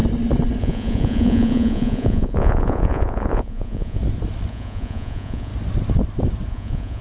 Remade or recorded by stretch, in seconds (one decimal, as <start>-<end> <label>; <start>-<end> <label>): 0.0-0.6 recorded; 0.6-4.0 remade; 4.0-4.5 recorded; 4.5-5.5 remade; 5.5-6.5 recorded; 6.5-7.0 remade